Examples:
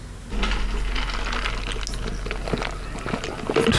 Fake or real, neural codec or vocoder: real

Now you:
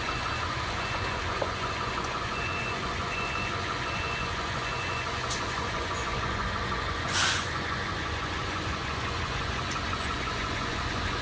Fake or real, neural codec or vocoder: fake, vocoder, Vocos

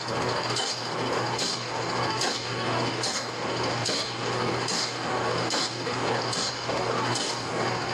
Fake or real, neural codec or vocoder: fake, codec, DAC